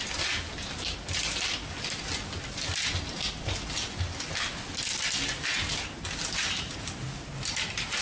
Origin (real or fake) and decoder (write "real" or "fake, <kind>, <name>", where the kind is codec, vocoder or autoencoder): real